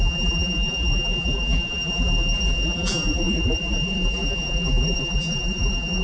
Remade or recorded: remade